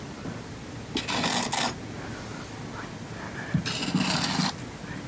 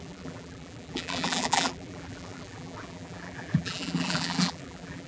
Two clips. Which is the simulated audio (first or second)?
second